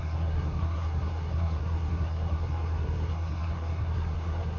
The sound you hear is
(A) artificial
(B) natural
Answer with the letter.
A